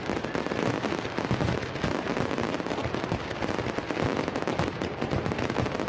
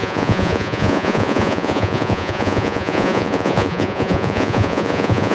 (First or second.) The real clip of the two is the first